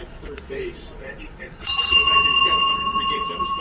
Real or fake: fake